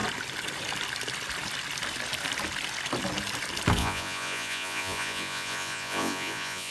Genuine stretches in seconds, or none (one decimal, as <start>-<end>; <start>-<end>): 0.0-3.8